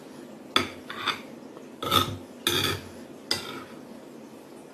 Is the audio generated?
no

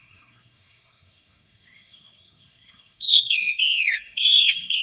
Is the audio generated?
yes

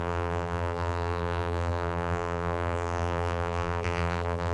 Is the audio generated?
yes